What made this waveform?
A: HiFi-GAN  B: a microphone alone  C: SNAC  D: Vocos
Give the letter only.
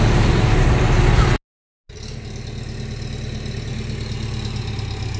B